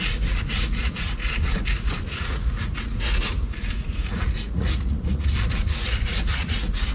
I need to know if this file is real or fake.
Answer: fake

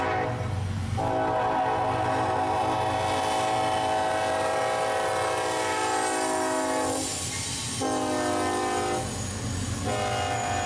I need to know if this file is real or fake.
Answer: real